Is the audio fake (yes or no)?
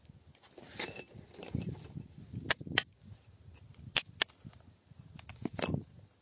no